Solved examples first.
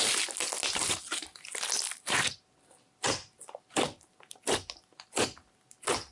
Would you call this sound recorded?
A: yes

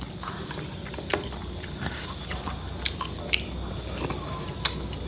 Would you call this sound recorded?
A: yes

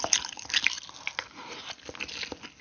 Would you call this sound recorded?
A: yes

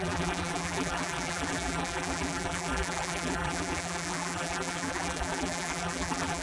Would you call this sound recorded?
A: no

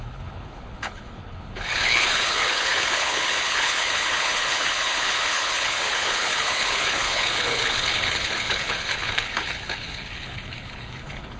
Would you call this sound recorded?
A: no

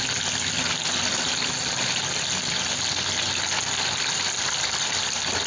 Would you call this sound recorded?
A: yes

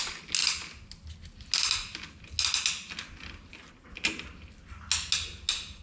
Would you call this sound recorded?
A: yes